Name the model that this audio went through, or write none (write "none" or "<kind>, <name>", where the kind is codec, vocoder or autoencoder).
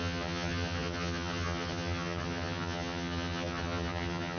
vocoder, HiFi-GAN